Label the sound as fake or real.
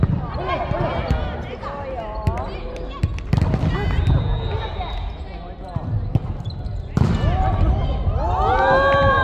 real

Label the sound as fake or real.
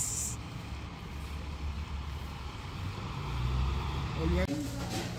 real